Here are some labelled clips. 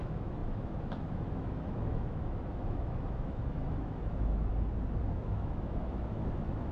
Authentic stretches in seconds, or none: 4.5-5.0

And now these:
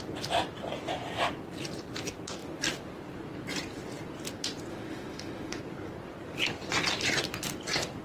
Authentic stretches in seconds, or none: 0.0-4.7; 5.6-8.0

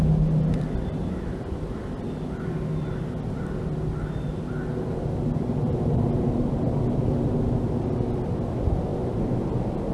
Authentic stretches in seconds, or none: 0.0-9.9

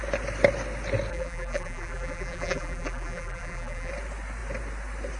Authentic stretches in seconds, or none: 0.0-1.1; 3.9-5.2

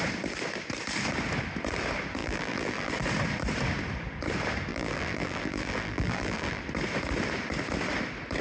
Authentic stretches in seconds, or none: 0.0-2.2; 2.9-4.7; 6.6-8.4

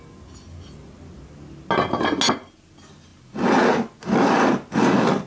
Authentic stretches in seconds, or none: 0.0-5.3